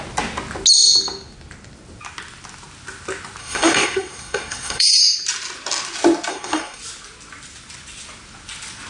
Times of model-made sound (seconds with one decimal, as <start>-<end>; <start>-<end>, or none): 3.4-5.0; 6.3-6.8